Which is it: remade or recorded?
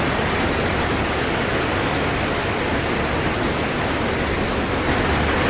recorded